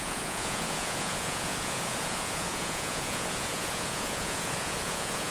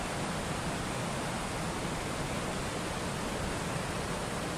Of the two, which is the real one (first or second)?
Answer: second